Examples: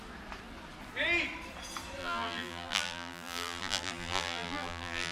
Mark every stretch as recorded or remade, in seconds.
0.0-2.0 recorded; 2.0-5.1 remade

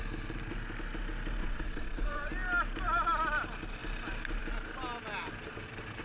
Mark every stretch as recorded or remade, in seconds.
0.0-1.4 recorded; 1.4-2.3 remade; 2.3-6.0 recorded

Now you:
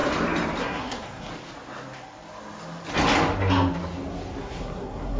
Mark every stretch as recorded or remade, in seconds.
0.0-0.6 recorded; 0.6-1.3 remade; 1.3-4.4 recorded; 4.4-5.2 remade

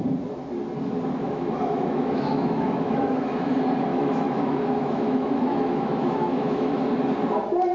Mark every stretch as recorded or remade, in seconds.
0.0-1.2 recorded; 1.2-3.5 remade; 3.5-3.9 recorded; 3.9-6.8 remade; 6.8-7.7 recorded

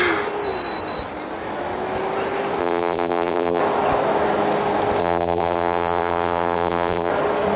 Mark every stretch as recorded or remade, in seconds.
0.0-2.6 recorded; 2.6-3.6 remade; 3.6-5.0 recorded; 5.0-7.1 remade; 7.1-7.6 recorded